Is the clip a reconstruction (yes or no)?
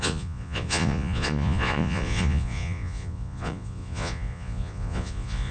yes